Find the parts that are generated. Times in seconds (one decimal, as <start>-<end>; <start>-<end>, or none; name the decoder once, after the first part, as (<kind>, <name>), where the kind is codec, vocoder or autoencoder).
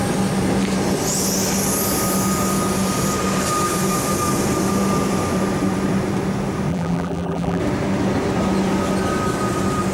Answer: 6.7-7.6 (vocoder, BigVGAN v2)